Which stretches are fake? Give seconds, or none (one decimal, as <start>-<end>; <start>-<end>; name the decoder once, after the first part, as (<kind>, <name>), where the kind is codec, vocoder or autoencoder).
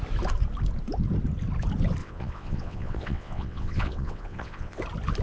2.0-4.8 (vocoder, WaveNeXt)